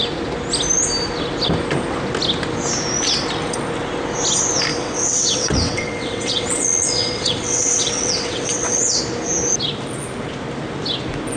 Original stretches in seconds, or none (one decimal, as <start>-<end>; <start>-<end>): 0.0-4.7; 9.0-11.4